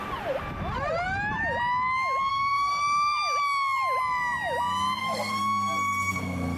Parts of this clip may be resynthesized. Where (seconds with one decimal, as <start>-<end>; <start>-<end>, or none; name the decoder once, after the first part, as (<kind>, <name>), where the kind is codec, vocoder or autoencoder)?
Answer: 2.3-2.8 (codec, SNAC); 5.0-6.6